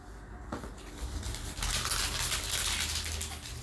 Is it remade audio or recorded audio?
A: recorded